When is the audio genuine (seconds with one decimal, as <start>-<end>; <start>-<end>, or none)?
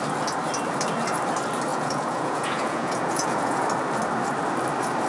0.0-1.7; 3.6-5.1